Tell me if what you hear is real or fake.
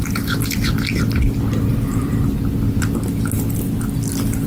real